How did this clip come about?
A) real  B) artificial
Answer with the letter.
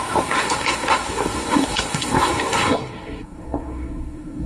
B